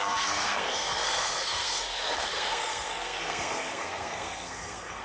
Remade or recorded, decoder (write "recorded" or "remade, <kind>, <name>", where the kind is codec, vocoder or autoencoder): remade, codec, SNAC